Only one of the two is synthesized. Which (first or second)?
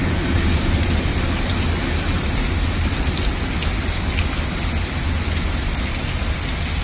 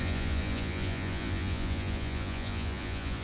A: second